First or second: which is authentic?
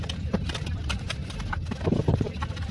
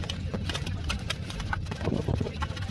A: first